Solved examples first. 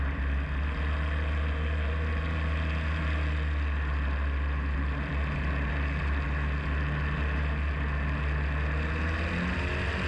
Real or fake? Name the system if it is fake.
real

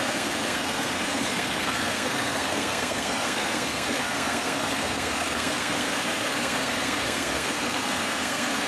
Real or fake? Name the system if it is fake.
fake, codec, SNAC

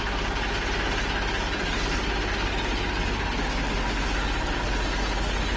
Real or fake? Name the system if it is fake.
real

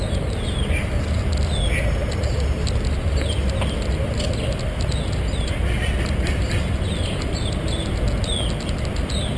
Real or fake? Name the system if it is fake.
real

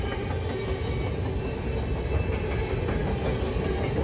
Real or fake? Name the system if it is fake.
real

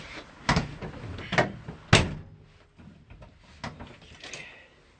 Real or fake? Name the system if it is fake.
real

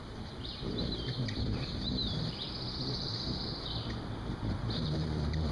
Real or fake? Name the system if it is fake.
fake, vocoder, BigVGAN v2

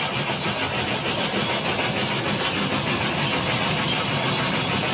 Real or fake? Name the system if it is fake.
real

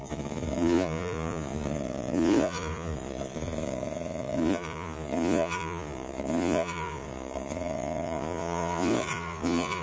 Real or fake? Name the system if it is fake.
fake, vocoder, Vocos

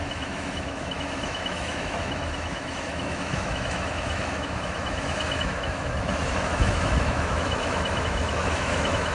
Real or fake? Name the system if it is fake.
fake, autoencoder, DAC-VAE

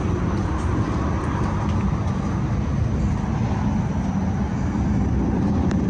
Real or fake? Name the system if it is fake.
real